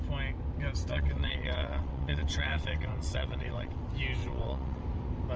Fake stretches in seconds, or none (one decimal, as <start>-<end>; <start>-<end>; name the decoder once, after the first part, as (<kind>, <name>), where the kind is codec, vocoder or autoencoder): 0.9-3.8 (vocoder, WaveNeXt); 4.2-4.8